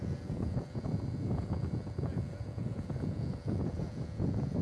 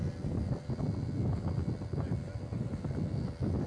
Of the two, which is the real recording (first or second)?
second